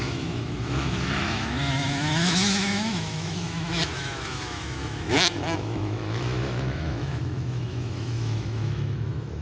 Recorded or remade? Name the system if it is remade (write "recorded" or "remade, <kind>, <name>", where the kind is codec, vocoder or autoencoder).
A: remade, autoencoder, DAC-VAE